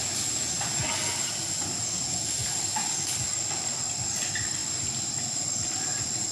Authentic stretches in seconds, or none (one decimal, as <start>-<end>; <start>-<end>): 0.0-4.6; 5.1-6.3